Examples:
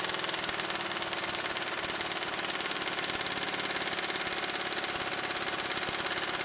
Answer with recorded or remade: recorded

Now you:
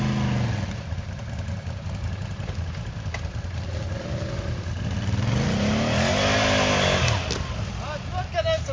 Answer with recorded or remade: recorded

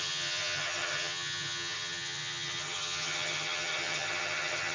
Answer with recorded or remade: remade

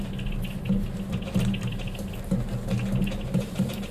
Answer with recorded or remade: recorded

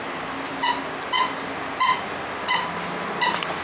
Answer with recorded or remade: recorded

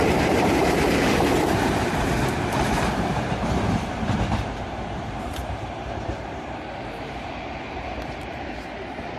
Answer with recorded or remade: remade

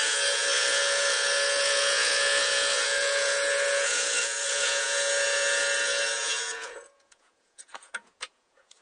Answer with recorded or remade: remade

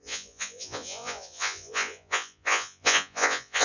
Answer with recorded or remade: remade